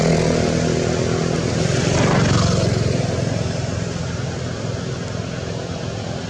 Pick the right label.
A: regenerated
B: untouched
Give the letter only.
B